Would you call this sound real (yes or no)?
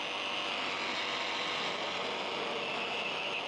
yes